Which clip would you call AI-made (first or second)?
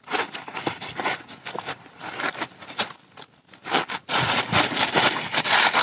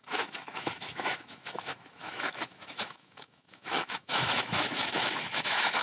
second